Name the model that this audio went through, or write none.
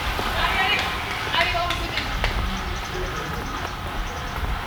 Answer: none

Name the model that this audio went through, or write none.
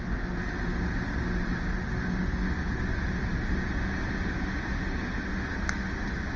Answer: none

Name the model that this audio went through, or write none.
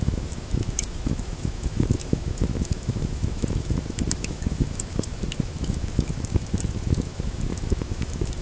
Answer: autoencoder, DAC-VAE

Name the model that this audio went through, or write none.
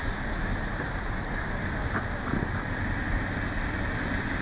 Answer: none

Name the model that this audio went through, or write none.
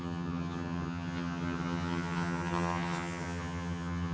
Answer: vocoder, HiFi-GAN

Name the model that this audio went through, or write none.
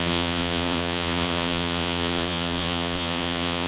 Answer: vocoder, Vocos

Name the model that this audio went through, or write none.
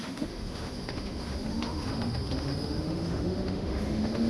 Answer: autoencoder, DAC-VAE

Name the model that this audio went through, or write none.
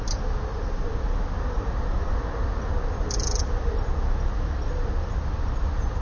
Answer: none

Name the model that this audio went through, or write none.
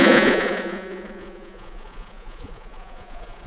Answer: vocoder, Vocos